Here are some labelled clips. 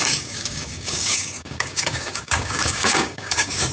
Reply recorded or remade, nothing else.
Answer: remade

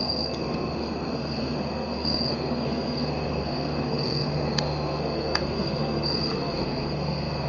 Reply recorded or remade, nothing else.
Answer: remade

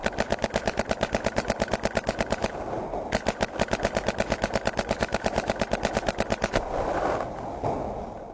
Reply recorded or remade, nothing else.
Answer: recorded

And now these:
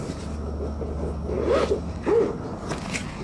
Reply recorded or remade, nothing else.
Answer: recorded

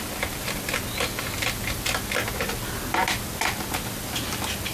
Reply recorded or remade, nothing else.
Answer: recorded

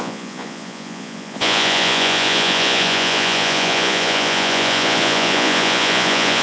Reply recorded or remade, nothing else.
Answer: remade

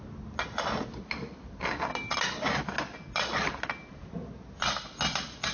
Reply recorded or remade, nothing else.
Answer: recorded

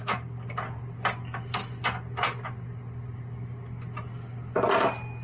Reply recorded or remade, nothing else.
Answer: recorded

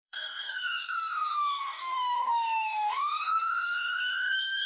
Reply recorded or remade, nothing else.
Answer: remade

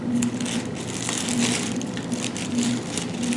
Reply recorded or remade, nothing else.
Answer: recorded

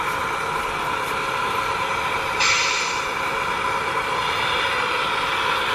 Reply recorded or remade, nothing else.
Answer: recorded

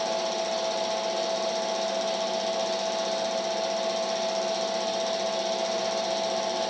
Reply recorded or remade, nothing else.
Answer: recorded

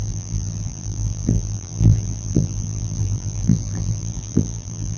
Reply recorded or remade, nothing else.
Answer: remade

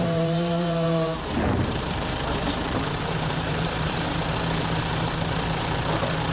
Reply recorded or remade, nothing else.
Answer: remade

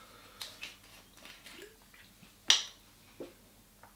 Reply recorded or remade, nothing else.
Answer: recorded